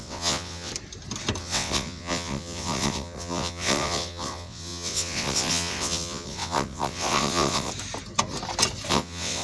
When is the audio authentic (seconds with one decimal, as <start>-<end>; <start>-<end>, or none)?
0.7-1.4; 7.7-8.9